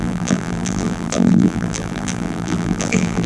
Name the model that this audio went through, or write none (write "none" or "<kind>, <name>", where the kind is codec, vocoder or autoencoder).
vocoder, BigVGAN v2